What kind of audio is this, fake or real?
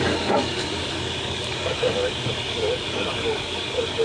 fake